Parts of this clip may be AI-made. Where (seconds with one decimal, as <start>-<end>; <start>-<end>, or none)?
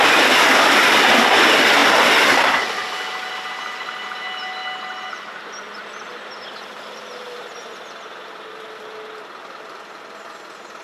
none